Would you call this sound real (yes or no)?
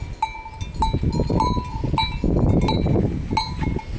yes